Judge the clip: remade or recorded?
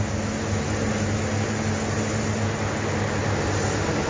recorded